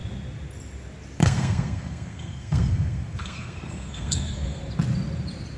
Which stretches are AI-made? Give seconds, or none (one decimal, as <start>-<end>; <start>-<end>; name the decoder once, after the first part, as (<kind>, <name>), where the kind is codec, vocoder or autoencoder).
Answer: 1.2-4.6 (codec, SNAC)